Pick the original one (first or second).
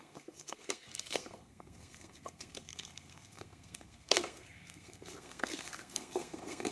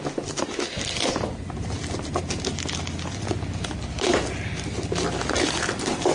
second